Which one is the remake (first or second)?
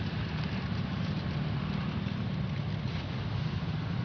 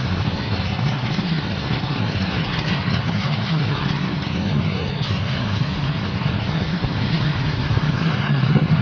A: second